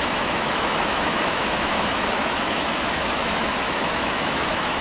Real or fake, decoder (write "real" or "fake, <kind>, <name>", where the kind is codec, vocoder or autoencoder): fake, autoencoder, DAC-VAE